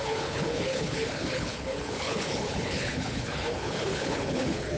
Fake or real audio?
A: fake